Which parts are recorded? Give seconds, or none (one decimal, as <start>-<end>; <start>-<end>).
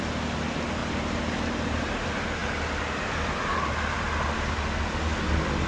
0.0-5.7